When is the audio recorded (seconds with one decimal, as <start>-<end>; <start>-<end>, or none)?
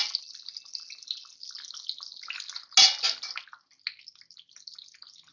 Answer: 0.0-5.3